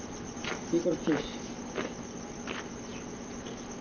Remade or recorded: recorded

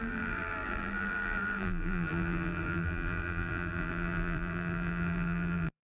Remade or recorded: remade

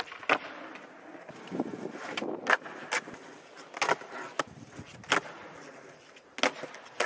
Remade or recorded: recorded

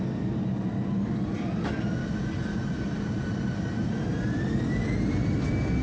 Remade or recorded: recorded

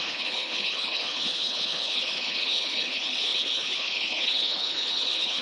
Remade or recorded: remade